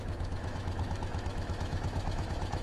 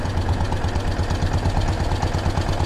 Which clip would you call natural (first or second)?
second